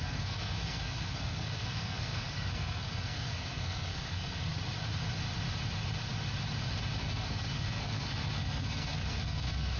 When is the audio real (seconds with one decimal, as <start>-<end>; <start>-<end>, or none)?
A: 4.5-7.0